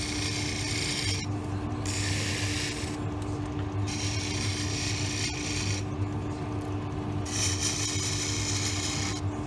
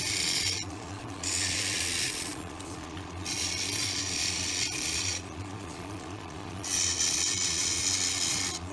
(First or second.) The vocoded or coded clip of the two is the second